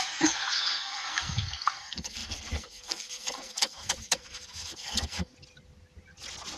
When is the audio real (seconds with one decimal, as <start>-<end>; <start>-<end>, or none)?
5.3-6.6